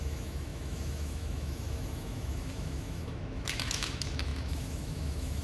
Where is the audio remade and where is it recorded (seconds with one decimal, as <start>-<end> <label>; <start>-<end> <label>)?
0.0-5.4 remade